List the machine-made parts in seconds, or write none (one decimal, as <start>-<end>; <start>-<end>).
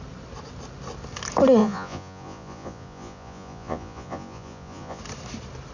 1.6-5.0